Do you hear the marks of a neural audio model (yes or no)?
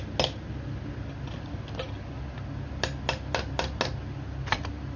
no